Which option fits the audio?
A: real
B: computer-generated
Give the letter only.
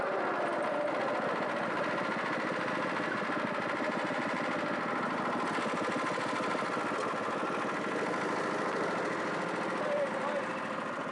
A